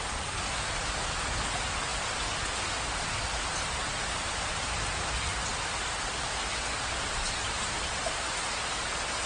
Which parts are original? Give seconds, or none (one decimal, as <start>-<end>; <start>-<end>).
0.0-5.5; 8.8-9.3